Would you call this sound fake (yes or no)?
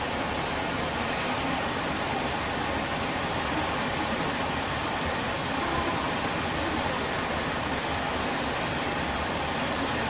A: no